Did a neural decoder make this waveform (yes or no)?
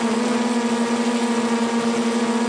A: no